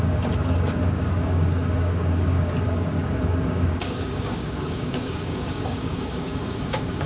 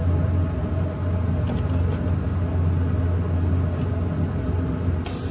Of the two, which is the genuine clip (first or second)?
second